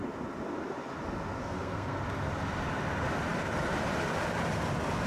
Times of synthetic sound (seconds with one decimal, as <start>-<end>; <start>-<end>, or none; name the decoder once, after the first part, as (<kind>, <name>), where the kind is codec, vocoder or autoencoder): 1.4-2.0 (codec, SNAC)